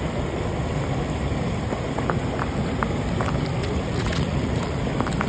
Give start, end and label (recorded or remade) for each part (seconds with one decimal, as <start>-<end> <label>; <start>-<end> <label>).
0.0-3.6 recorded; 3.6-4.8 remade; 4.8-5.3 recorded